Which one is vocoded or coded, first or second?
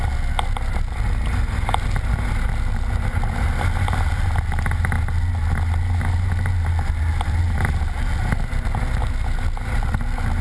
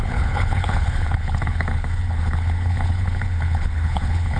second